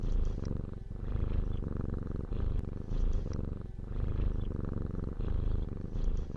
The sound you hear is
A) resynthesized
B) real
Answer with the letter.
A